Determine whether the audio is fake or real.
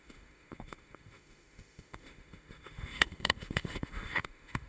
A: fake